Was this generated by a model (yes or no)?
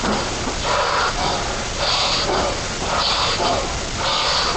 no